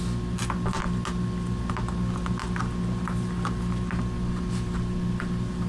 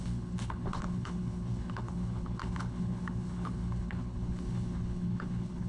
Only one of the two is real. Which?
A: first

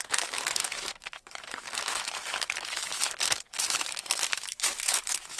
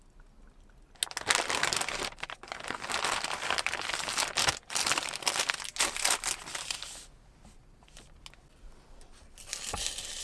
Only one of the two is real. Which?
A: second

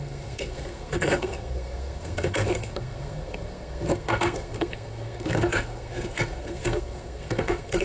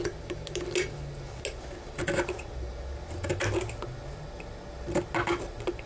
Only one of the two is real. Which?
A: second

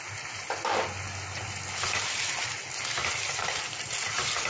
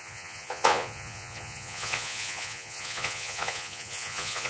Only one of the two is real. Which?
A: first